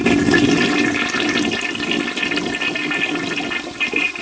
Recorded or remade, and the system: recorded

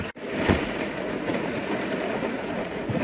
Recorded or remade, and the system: remade, vocoder, Vocos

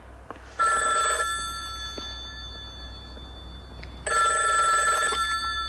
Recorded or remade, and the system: recorded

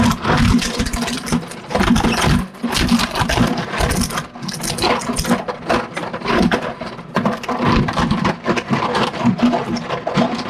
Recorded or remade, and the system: recorded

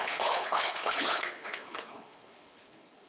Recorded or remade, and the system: remade, codec, HILCodec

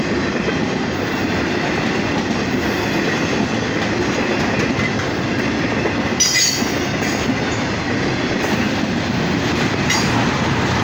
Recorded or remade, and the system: recorded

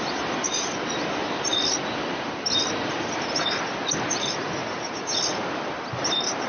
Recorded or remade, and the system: recorded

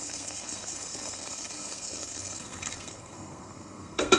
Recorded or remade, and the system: remade, codec, SNAC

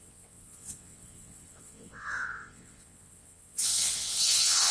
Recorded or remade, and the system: remade, vocoder, WaveNeXt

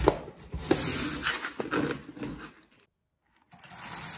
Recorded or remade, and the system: recorded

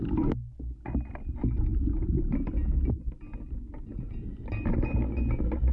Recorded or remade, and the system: recorded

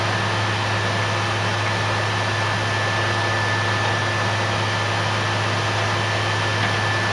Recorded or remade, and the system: recorded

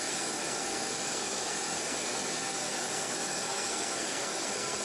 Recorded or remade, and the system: remade, codec, SNAC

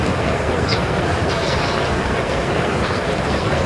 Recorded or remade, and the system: remade, codec, SNAC